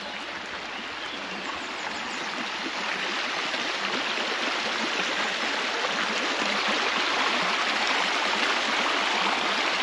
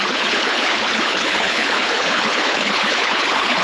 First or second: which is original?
first